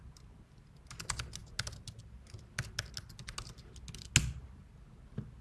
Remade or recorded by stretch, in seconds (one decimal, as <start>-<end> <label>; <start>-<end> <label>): 0.0-5.4 recorded